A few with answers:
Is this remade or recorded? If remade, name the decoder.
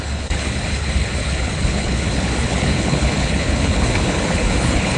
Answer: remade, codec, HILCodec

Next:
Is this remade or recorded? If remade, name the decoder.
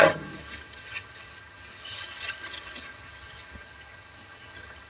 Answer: remade, vocoder, HiFi-GAN